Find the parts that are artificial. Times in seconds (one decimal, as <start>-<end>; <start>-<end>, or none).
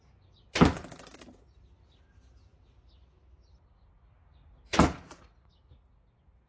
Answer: none